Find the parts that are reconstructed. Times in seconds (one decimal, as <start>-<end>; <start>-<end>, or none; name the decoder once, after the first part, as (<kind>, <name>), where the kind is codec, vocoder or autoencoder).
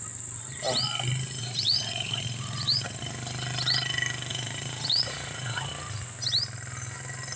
1.4-3.0 (vocoder, Vocos); 4.3-5.7